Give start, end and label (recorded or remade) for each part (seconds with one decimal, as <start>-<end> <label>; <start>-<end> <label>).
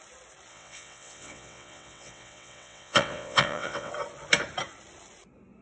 0.0-0.5 recorded; 0.5-3.9 remade; 3.9-5.6 recorded